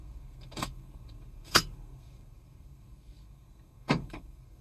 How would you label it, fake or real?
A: fake